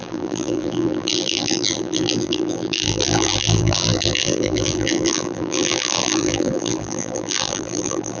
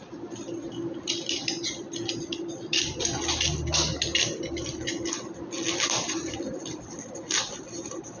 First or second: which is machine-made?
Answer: first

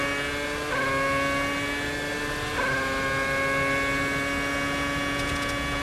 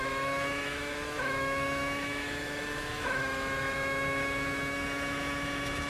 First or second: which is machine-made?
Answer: second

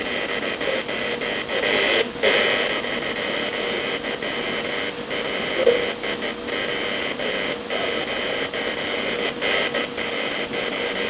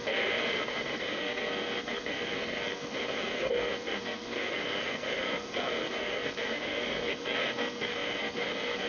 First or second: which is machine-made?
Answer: second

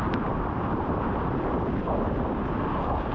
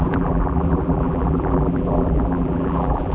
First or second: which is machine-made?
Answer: second